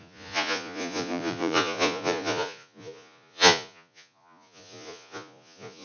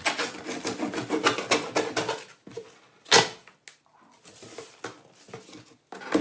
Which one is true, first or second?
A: second